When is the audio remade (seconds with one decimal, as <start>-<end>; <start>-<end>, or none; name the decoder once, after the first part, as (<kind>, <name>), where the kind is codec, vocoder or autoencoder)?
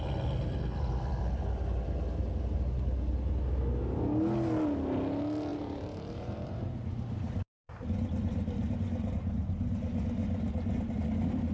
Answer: 5.5-8.8 (vocoder, BigVGAN v2); 10.2-10.9